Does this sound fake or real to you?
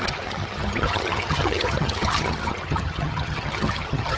fake